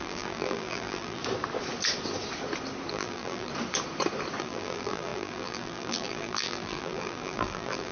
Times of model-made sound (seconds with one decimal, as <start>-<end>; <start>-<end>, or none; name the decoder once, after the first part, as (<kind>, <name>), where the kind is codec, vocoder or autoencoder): 0.0-1.2 (vocoder, BigVGAN v2); 2.9-3.5; 4.4-7.9